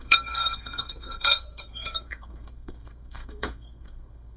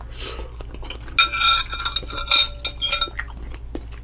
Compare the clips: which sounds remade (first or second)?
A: first